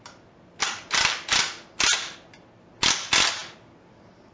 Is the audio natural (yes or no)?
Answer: yes